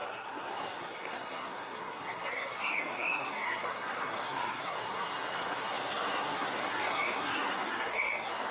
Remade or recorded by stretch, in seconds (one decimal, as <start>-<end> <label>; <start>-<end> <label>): 0.0-8.5 remade